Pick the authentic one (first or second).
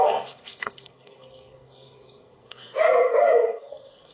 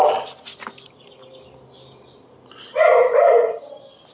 second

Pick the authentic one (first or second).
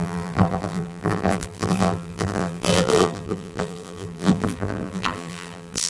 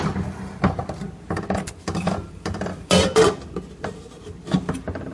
second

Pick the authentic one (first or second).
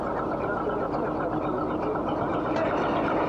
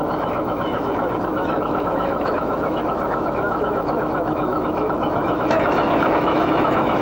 first